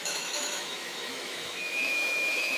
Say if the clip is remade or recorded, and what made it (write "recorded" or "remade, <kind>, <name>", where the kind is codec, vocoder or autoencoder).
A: remade, autoencoder, DAC-VAE